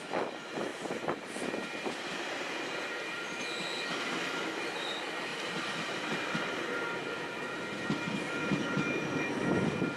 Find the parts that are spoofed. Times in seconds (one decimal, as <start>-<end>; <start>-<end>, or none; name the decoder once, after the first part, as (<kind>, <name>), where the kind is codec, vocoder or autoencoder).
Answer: 0.7-3.4 (vocoder, BigVGAN v2); 5.3-9.3